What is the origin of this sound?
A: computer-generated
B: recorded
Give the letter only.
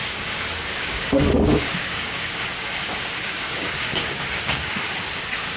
A